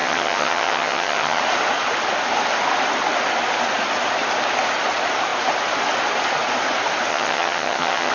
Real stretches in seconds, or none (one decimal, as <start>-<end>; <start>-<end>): 1.4-7.1